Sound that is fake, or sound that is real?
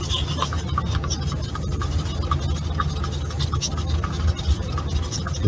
real